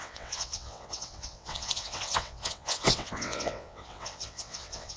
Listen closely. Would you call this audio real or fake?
fake